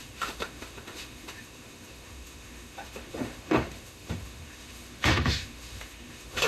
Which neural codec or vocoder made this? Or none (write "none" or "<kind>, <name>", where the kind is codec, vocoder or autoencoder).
autoencoder, DAC-VAE